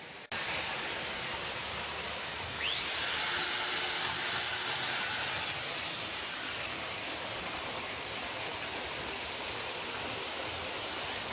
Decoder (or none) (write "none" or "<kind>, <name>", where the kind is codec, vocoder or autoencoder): none